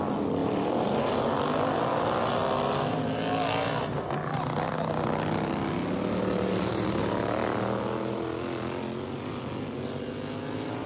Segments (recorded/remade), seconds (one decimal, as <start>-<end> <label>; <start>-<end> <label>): 0.0-0.4 recorded; 0.4-1.1 remade; 1.1-10.9 recorded